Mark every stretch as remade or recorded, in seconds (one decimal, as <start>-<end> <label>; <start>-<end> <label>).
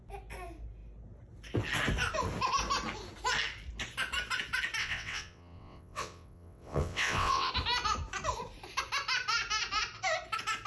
0.0-4.8 recorded; 4.8-7.5 remade; 7.5-10.7 recorded